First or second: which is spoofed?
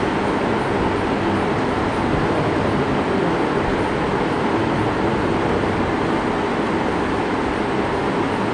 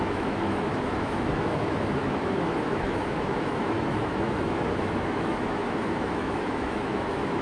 second